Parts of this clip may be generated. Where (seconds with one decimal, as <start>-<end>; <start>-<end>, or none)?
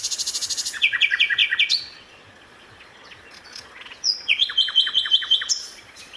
0.0-6.2